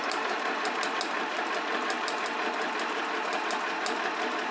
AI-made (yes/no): no